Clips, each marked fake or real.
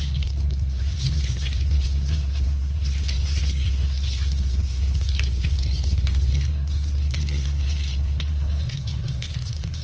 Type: fake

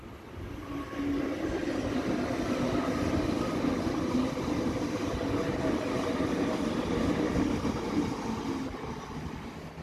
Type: real